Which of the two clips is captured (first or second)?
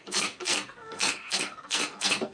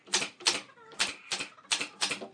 second